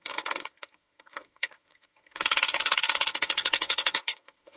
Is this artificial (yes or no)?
yes